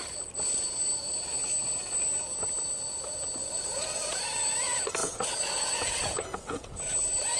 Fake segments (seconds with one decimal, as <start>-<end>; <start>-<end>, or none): 3.4-4.2; 5.0-6.8